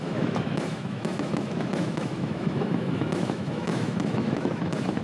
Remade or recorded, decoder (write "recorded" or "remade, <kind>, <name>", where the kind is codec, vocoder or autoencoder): remade, autoencoder, DAC-VAE